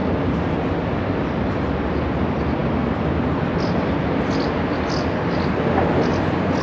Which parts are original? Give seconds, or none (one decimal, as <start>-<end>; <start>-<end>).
0.0-6.6